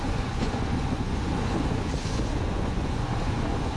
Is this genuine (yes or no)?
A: no